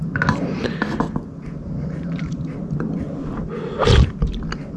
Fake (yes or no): no